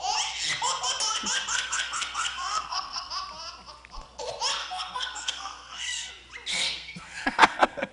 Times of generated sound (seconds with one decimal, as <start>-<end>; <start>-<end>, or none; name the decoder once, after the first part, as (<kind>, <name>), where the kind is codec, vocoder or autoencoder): 1.5-3.1 (codec, SNAC); 4.6-6.1; 6.5-7.9